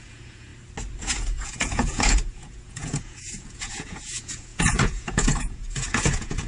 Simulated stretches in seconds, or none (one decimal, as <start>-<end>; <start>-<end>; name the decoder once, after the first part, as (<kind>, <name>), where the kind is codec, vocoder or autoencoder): 0.0-0.5 (vocoder, Vocos); 1.0-6.5